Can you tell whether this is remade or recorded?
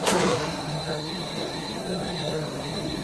remade